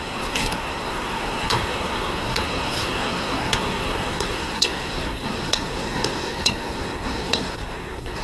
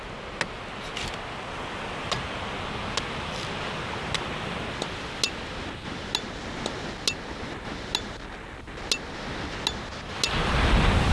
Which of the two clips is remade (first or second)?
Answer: first